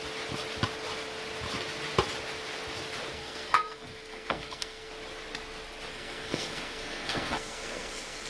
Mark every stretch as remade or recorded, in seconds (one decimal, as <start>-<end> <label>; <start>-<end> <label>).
0.0-3.1 recorded; 3.1-4.9 remade; 4.9-5.9 recorded; 5.9-8.3 remade